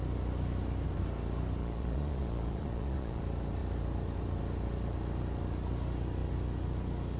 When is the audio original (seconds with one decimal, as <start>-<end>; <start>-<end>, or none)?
0.0-1.6; 3.2-7.2